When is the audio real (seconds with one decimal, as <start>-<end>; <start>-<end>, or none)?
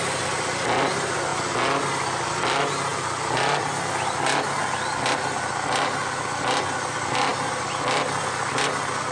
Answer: 0.0-9.1